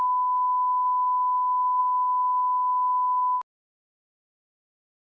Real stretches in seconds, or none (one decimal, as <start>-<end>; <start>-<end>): 0.0-5.1